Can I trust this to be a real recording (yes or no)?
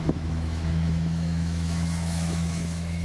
no